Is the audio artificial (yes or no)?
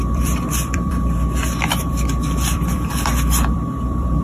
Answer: yes